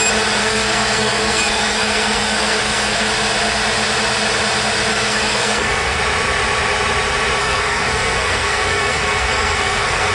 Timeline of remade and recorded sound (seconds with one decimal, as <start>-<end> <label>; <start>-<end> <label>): 0.0-0.4 recorded; 0.4-3.1 remade; 3.1-4.9 recorded; 4.9-6.0 remade; 6.0-7.4 recorded; 7.4-10.1 remade